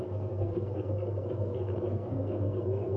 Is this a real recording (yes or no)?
no